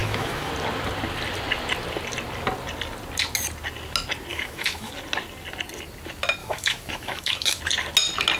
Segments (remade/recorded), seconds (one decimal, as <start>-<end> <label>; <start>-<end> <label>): 0.0-0.5 remade; 0.5-4.3 recorded; 4.3-4.9 remade; 4.9-6.4 recorded; 6.4-7.6 remade; 7.6-8.4 recorded